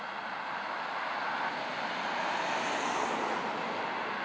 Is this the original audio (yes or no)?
yes